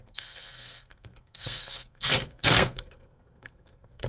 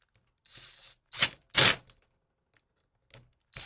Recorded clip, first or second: second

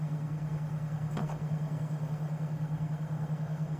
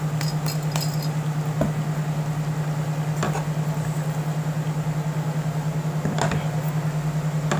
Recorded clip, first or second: second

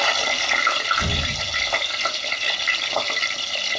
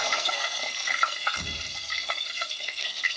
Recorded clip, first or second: first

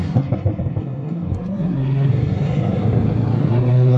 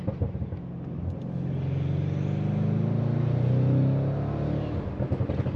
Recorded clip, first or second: second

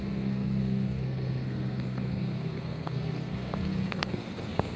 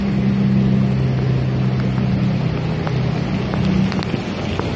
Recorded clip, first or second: second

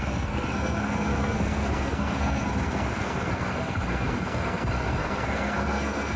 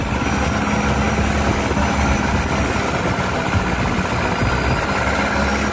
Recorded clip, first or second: second